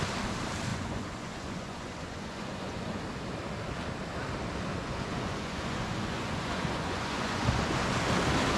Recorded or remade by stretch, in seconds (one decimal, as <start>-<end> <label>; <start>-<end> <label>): 0.0-0.7 recorded; 0.7-3.0 remade; 3.0-4.7 recorded; 4.7-8.1 remade; 8.1-8.6 recorded